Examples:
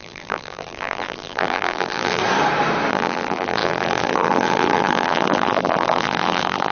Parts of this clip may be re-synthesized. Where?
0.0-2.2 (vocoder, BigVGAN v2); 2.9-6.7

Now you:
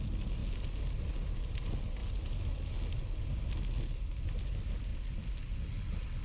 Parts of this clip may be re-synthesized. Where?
none